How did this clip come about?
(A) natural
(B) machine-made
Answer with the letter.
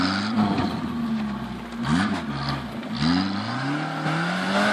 A